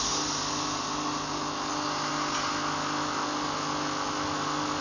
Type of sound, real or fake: real